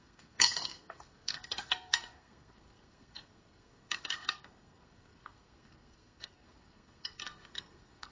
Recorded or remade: remade